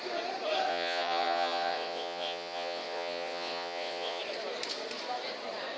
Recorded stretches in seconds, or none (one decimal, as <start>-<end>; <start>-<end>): 0.0-0.7; 4.2-5.8